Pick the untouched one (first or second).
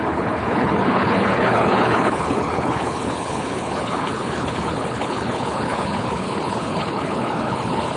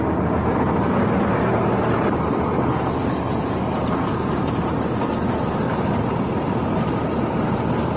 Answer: second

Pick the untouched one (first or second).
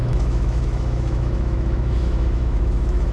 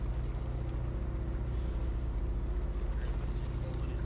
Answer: second